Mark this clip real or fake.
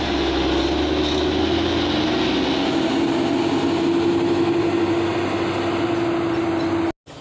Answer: real